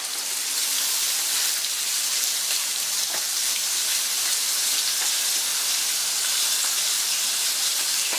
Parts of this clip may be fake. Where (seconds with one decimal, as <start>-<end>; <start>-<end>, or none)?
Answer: 1.9-4.2; 5.5-6.0